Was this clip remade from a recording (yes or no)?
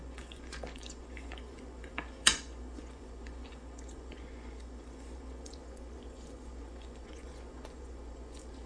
yes